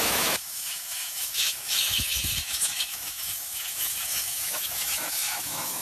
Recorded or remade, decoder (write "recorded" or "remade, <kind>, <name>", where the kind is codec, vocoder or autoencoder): remade, autoencoder, DAC-VAE